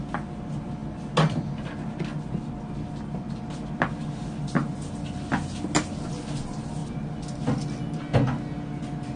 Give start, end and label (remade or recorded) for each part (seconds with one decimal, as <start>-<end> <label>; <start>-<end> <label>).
0.0-9.2 recorded